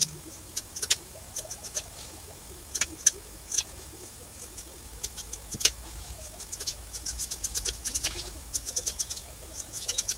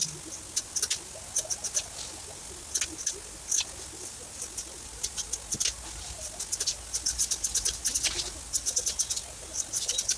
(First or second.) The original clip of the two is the second